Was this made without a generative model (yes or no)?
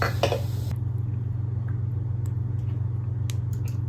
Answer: yes